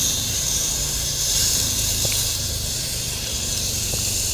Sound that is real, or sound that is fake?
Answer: fake